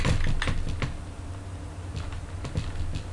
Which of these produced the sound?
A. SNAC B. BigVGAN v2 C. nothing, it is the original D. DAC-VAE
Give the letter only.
C